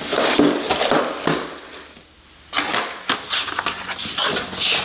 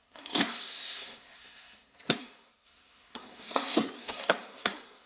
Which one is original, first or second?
first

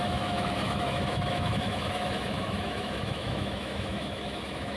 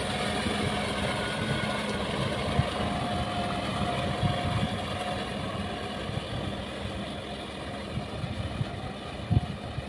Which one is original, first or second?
second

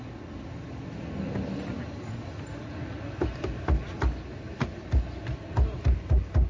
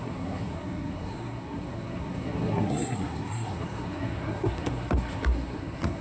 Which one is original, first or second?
first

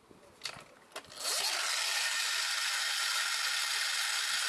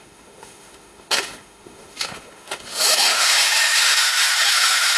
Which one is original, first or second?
first